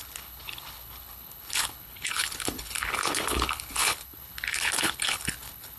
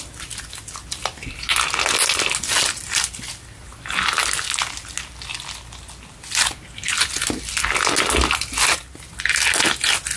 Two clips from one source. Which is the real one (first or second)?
second